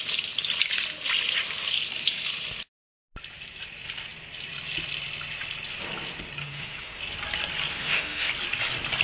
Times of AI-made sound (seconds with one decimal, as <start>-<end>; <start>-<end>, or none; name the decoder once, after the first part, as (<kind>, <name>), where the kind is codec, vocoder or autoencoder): 6.4-7.0 (autoencoder, DAC-VAE); 7.7-8.3